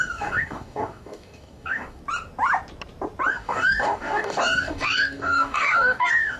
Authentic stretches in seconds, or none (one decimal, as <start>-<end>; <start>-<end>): 2.0-3.3